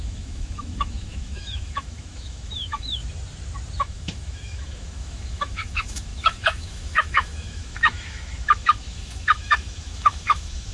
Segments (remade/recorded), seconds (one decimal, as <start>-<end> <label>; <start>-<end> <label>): 0.0-3.0 remade; 3.0-3.8 recorded; 3.8-10.7 remade